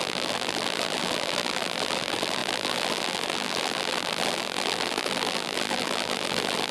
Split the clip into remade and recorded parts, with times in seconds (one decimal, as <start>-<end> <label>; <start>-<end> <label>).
0.0-6.7 remade